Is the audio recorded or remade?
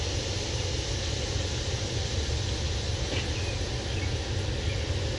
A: recorded